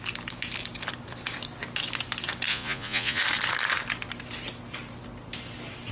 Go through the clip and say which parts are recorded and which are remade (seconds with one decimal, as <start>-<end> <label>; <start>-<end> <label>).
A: 0.0-2.5 recorded; 2.5-3.2 remade; 3.2-5.9 recorded